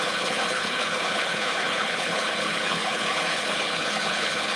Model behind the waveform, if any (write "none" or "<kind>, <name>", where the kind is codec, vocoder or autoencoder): codec, HILCodec